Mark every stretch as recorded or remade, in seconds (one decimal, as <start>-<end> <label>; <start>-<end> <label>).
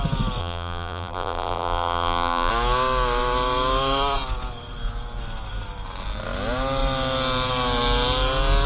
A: 0.0-0.4 recorded; 0.4-2.5 remade; 2.5-8.7 recorded